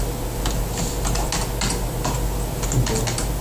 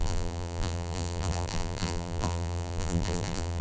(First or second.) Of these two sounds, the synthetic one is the second